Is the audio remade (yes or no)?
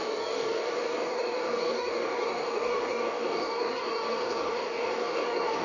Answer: yes